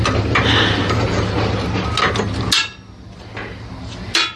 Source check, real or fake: real